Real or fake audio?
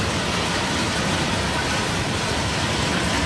real